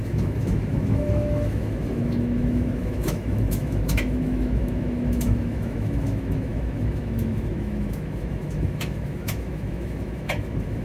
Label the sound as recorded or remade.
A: remade